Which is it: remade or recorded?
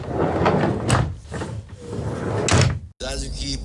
recorded